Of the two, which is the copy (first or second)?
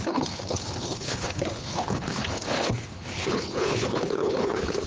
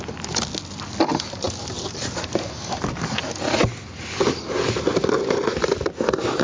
first